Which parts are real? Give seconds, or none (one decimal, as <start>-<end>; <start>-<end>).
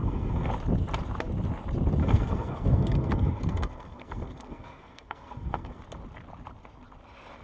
0.5-2.0; 5.8-7.4